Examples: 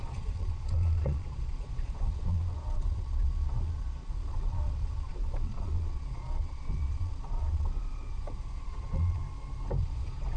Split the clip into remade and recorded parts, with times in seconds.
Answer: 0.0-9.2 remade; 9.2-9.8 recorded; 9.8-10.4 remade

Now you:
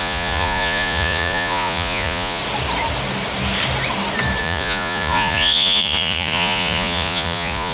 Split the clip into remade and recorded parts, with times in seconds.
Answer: 0.0-2.4 remade; 2.4-4.4 recorded; 4.4-7.7 remade